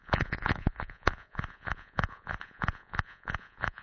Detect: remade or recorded remade